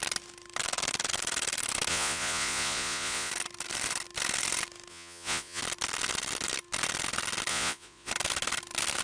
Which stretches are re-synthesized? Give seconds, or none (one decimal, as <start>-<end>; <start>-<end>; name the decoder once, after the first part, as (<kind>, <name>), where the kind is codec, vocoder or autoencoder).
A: 1.9-3.3 (vocoder, Vocos); 4.9-5.6; 7.5-8.1